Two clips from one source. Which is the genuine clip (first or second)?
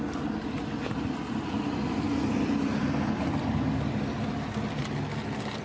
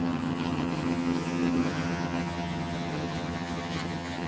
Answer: first